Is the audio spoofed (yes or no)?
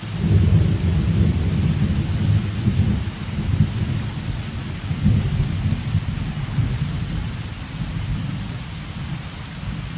no